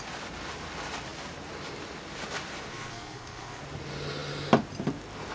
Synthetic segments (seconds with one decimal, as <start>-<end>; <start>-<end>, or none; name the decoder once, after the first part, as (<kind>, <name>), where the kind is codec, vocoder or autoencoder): 2.7-3.6 (codec, SNAC)